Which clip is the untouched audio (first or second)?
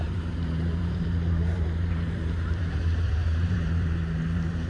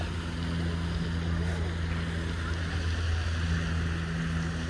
second